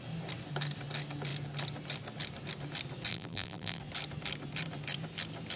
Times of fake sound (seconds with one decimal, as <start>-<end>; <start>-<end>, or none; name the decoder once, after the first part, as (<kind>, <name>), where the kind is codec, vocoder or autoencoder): 3.1-3.8 (vocoder, BigVGAN v2)